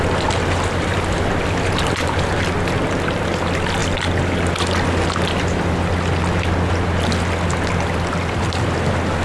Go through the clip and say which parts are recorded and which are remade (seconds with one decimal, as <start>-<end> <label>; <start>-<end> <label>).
0.0-9.2 recorded